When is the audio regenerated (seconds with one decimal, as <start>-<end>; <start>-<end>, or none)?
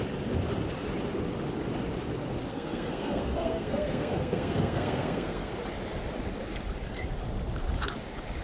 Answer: 2.5-5.5